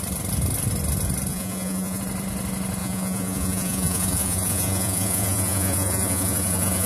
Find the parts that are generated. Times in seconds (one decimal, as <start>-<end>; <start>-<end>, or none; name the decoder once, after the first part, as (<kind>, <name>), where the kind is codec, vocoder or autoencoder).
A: 1.3-2.0 (vocoder, Vocos); 2.8-6.9